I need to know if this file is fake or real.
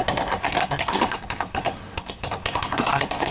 fake